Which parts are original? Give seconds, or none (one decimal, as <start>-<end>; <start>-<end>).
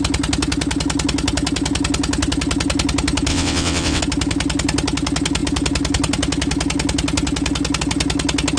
0.0-3.3; 4.0-8.6